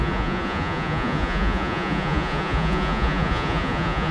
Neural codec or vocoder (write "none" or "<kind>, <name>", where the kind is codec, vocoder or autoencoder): vocoder, Vocos